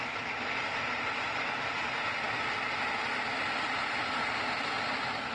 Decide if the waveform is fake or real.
real